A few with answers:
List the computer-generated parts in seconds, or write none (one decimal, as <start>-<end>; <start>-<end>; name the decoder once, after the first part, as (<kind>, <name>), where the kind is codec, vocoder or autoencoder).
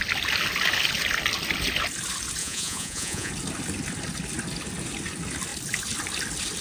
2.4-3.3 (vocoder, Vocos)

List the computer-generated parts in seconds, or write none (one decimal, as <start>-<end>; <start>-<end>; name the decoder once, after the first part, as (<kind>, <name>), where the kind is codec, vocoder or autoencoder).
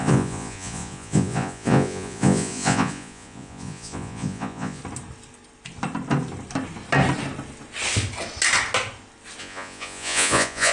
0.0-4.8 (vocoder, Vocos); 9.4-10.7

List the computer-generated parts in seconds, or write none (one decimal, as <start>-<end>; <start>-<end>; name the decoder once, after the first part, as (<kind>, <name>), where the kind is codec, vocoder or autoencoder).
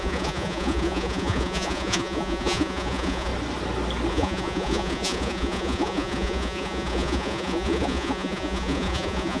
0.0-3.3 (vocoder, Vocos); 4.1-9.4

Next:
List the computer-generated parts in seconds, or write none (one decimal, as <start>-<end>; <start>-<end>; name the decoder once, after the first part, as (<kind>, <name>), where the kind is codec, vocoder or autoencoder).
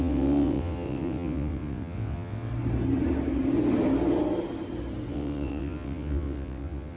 0.0-2.5 (vocoder, WaveNeXt); 5.1-7.0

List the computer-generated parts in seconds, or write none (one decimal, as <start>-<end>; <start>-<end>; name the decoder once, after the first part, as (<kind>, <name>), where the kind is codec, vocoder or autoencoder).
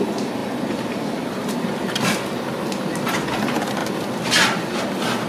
none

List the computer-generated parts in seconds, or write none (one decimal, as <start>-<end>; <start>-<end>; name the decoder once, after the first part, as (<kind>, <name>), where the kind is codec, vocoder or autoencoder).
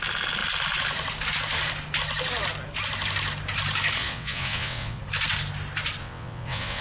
4.0-5.0 (vocoder, WaveNeXt); 6.0-6.8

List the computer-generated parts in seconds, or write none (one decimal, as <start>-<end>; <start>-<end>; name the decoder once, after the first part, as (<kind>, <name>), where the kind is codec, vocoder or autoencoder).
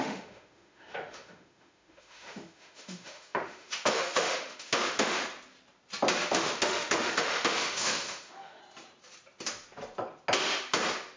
0.0-5.2 (autoencoder, DAC-VAE); 6.3-8.6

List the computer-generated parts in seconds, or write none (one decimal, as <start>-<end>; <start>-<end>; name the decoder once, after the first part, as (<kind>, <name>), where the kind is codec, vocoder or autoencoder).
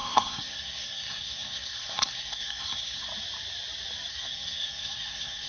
0.0-3.0 (codec, SNAC); 4.1-5.5